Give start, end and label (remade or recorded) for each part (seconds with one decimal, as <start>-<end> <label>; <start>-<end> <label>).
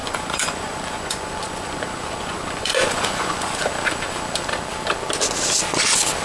0.0-3.7 remade; 3.7-6.2 recorded